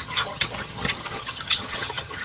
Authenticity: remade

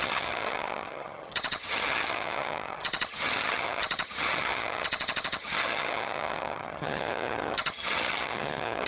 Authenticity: remade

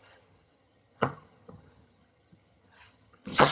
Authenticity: remade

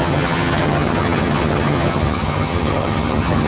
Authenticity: remade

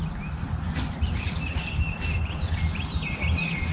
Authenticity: recorded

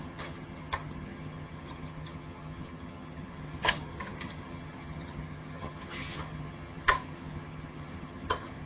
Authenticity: remade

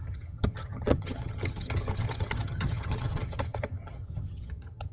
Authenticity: remade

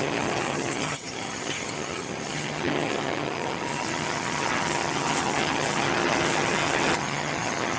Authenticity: remade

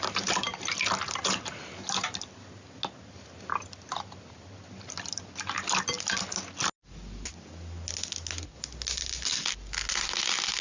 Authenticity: recorded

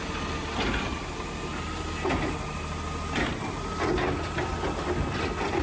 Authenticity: recorded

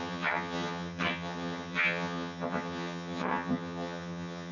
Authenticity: remade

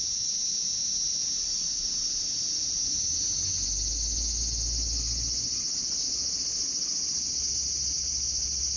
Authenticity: recorded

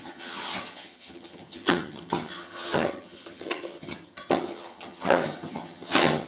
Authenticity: remade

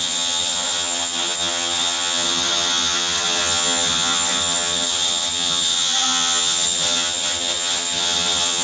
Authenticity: remade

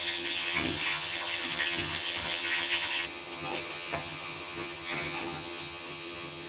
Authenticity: remade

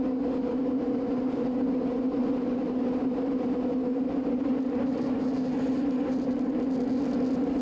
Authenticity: recorded